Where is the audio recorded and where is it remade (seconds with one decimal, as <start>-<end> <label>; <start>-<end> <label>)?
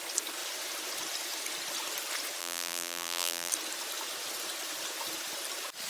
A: 0.0-2.4 recorded; 2.4-3.5 remade; 3.5-5.9 recorded